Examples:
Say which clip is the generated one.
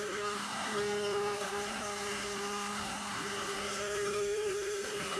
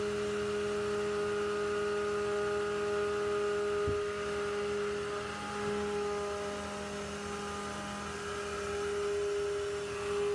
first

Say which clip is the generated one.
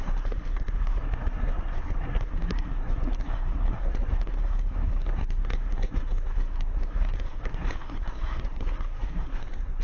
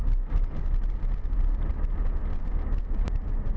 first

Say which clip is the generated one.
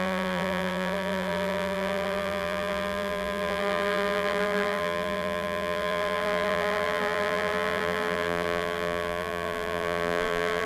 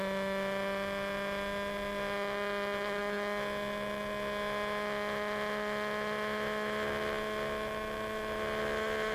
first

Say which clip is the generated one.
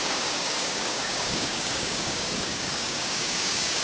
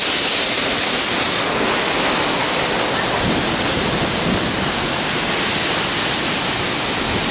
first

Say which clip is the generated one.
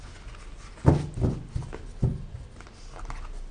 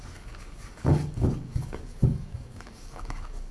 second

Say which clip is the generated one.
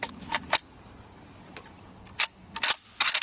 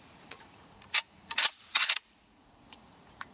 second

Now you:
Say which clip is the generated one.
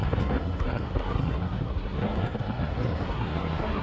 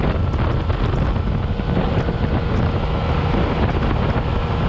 first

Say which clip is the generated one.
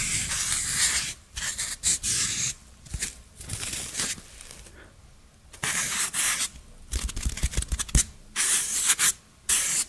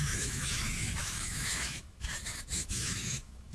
second